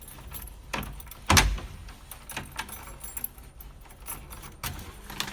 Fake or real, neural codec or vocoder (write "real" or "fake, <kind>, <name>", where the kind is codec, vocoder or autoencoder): real